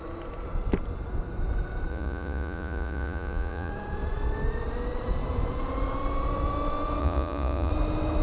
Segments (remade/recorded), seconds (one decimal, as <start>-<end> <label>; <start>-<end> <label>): 0.0-1.9 recorded; 1.9-3.7 remade; 3.7-7.0 recorded; 7.0-7.7 remade; 7.7-8.2 recorded